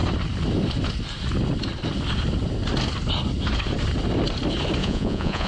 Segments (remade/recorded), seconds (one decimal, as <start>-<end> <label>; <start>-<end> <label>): 0.0-4.8 recorded; 4.8-5.5 remade